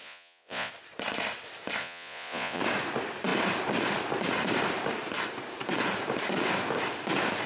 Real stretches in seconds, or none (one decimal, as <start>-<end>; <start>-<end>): 0.7-1.8; 2.6-7.5